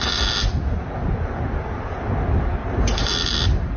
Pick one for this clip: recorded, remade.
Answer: recorded